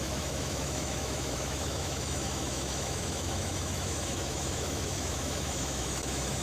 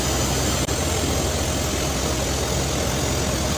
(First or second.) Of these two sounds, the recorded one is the second